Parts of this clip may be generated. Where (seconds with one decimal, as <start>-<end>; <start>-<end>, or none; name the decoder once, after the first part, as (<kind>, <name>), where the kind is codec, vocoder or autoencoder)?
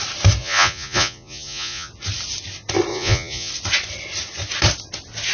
0.4-1.9 (vocoder, Vocos); 2.9-3.5